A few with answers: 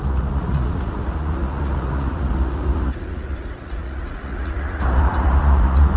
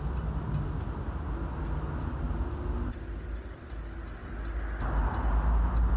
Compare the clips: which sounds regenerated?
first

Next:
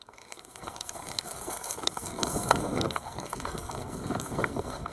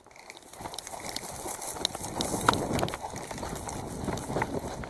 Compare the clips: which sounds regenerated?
first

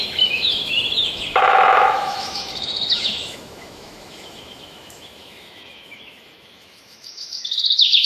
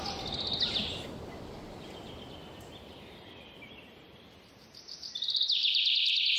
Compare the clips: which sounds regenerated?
first